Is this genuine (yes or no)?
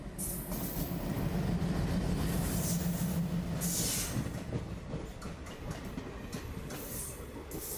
yes